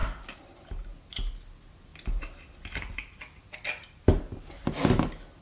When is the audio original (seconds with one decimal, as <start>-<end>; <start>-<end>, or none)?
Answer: 0.0-5.4